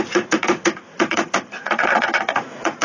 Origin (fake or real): fake